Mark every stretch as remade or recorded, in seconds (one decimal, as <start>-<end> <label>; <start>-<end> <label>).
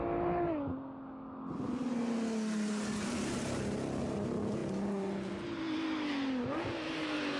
0.0-7.4 recorded